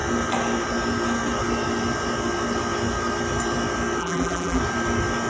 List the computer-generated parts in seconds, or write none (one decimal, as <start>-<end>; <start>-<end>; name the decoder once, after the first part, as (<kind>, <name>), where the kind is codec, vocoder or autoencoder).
4.0-4.6 (vocoder, BigVGAN v2)